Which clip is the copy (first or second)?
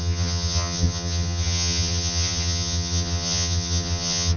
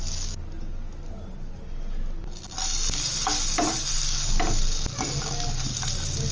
first